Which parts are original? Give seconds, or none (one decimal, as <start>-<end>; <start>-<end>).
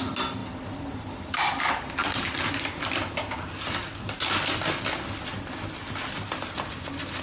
0.0-7.2